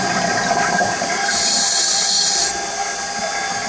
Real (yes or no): yes